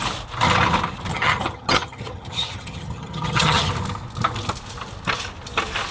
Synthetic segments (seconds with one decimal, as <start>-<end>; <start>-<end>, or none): 1.1-3.7